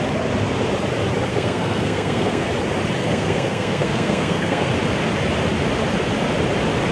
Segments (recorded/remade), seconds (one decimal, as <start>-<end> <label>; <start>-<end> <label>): 0.0-1.3 recorded; 1.3-2.5 remade; 2.5-3.0 recorded; 3.0-4.7 remade; 4.7-6.9 recorded